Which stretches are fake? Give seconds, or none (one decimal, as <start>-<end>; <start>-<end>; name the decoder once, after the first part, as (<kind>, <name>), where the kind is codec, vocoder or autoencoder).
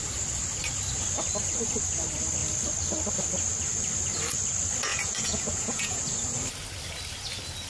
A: 4.9-6.0 (vocoder, Vocos)